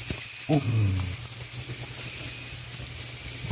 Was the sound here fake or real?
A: real